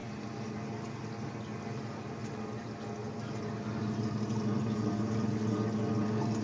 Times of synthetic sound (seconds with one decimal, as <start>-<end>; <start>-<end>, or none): none